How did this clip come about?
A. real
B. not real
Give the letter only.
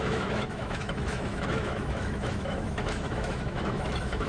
B